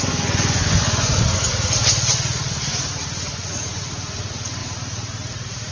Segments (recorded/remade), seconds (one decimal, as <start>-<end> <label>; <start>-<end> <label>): 0.0-1.5 remade; 1.5-2.3 recorded; 2.3-4.6 remade; 4.6-5.7 recorded